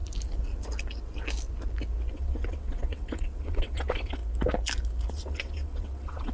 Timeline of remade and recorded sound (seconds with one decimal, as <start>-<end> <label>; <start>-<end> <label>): 0.0-2.1 recorded; 2.1-4.2 remade; 4.2-5.1 recorded; 5.1-6.3 remade